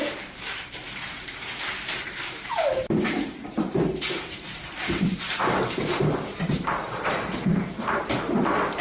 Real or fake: fake